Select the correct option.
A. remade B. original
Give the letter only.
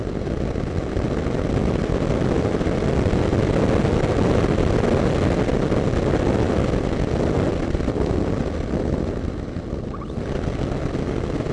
B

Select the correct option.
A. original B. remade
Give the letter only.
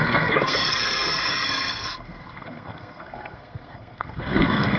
B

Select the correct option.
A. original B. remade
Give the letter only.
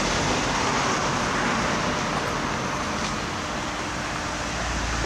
A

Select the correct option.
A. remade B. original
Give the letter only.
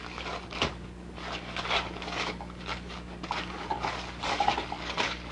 A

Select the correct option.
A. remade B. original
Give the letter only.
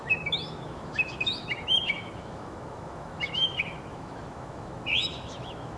A